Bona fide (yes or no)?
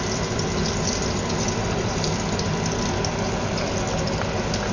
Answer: yes